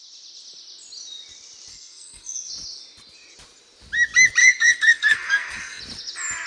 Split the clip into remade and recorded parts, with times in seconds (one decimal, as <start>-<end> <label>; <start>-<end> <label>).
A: 0.0-1.7 recorded; 1.7-2.5 remade; 2.5-4.4 recorded; 4.4-5.8 remade; 5.8-6.5 recorded